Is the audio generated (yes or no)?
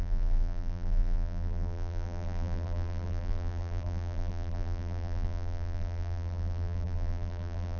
yes